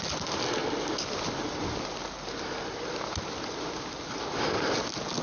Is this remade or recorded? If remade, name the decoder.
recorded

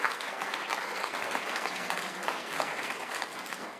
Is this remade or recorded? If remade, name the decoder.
remade, codec, SNAC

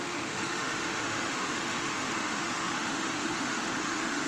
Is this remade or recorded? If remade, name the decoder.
remade, autoencoder, DAC-VAE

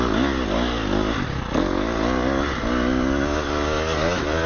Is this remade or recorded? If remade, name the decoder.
recorded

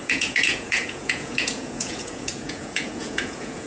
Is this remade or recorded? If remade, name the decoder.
remade, vocoder, Vocos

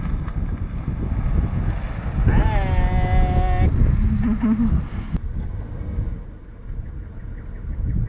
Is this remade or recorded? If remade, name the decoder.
recorded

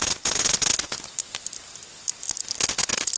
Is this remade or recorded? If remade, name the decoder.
recorded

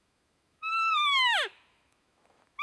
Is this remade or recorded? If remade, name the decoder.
remade, autoencoder, DAC-VAE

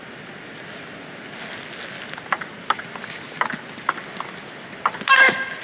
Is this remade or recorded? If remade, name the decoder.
recorded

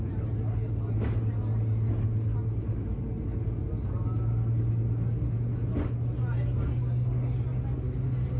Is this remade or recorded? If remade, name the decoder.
recorded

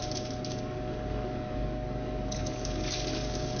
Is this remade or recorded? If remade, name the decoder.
remade, codec, DAC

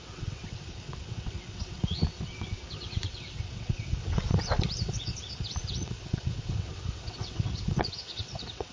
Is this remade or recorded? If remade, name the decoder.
remade, vocoder, WaveNeXt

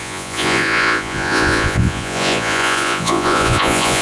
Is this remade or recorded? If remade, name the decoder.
remade, vocoder, Vocos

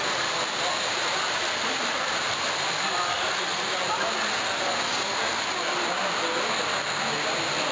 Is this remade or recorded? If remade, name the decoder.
recorded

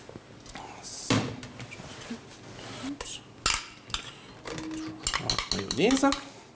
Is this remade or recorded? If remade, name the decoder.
recorded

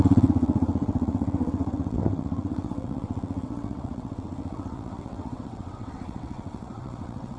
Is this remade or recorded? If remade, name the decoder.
remade, vocoder, WaveNeXt